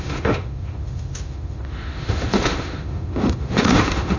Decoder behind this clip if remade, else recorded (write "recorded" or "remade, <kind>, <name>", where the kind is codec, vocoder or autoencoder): remade, autoencoder, DAC-VAE